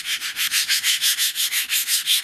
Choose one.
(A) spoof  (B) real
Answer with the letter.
A